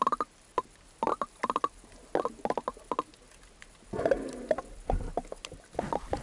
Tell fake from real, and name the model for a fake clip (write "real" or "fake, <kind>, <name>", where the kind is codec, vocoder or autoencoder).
real